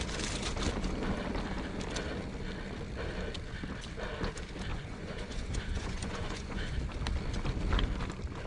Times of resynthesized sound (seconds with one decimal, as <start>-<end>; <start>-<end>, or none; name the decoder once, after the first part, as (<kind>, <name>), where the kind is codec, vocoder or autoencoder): 4.7-6.8 (vocoder, Vocos)